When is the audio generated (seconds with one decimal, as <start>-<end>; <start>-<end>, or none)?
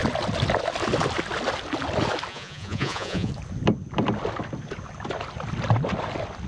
2.3-3.3